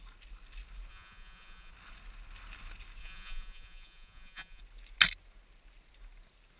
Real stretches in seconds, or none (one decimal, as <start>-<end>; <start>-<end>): 0.0-0.9; 1.7-3.0; 4.6-6.6